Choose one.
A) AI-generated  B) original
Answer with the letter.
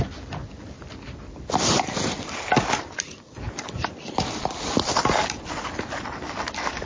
B